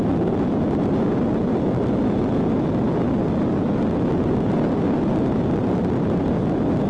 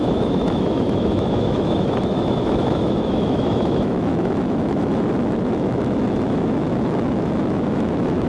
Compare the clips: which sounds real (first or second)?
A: first